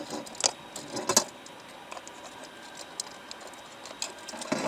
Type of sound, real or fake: real